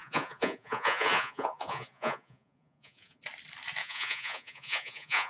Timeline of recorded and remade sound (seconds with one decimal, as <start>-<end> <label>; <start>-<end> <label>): 0.0-3.2 remade; 3.2-3.8 recorded; 3.8-5.3 remade

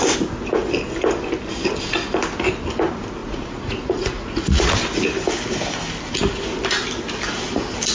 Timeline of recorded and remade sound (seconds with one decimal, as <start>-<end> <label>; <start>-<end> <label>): 0.0-3.2 recorded; 3.2-4.7 remade; 4.7-7.9 recorded

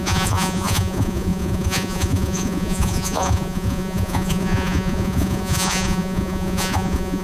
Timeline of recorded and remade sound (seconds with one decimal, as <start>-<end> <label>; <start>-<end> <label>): 0.0-7.2 remade

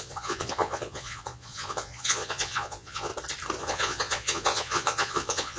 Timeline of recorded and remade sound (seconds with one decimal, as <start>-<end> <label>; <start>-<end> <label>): 0.0-3.1 remade; 3.1-3.6 recorded; 3.6-5.6 remade

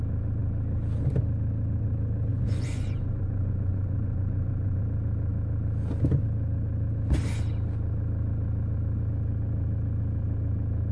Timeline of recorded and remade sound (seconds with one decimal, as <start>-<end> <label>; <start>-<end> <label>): 0.0-2.3 recorded; 2.3-4.8 remade; 4.8-10.9 recorded

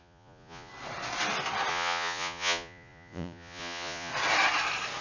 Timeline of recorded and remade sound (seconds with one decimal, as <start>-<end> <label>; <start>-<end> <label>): 0.0-0.7 remade; 0.7-1.7 recorded; 1.7-4.1 remade; 4.1-5.0 recorded

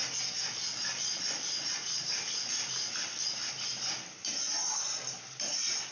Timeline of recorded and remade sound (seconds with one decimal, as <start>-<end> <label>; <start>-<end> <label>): 0.0-5.9 recorded